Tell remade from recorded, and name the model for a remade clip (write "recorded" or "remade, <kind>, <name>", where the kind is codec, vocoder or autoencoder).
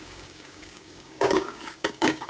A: remade, codec, DAC